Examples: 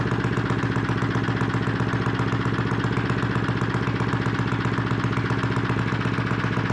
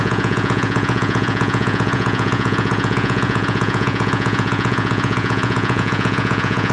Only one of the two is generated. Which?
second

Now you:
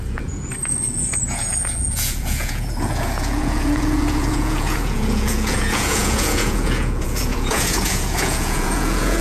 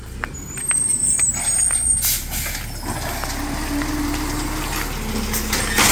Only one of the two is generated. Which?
first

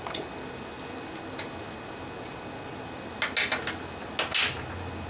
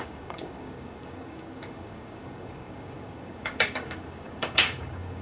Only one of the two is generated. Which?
second